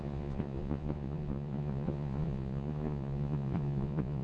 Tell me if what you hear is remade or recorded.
remade